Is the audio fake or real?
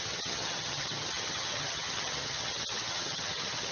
fake